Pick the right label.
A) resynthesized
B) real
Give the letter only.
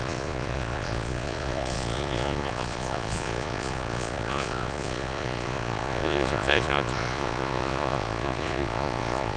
A